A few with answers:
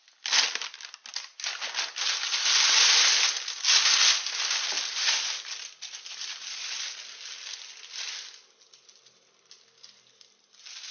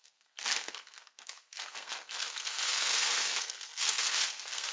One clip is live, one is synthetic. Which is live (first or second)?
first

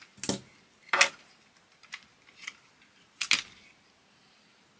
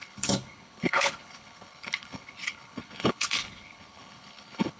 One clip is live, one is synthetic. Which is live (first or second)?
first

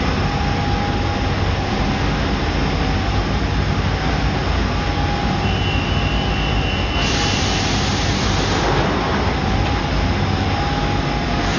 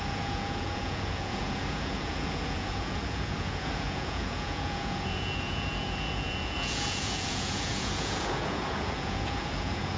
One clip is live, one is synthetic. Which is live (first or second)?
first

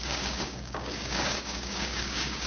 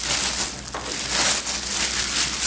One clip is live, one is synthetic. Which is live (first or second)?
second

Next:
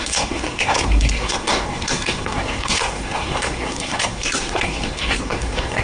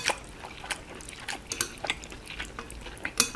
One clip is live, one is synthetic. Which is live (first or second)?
second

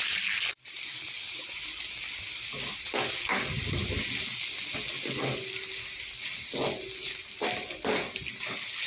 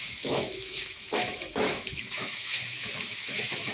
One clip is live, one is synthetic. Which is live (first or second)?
first